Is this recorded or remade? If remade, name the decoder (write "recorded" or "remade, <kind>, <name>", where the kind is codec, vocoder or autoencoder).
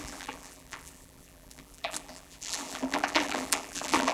remade, vocoder, BigVGAN v2